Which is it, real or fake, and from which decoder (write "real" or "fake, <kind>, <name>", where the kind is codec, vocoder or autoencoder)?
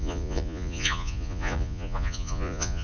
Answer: fake, vocoder, Vocos